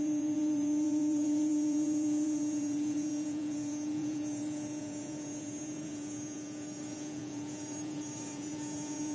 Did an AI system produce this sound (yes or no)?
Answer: yes